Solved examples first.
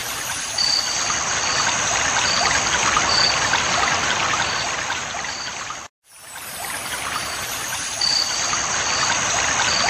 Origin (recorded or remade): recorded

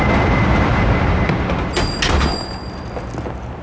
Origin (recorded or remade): recorded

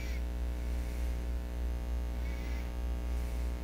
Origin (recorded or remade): recorded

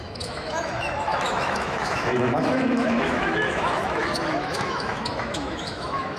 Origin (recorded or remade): remade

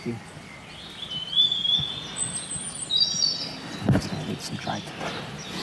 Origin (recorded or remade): recorded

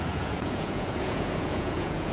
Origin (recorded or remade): remade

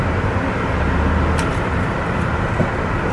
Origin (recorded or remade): recorded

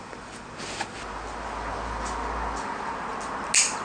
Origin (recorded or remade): recorded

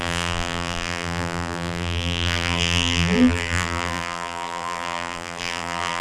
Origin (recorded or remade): remade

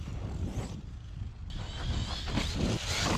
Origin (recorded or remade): recorded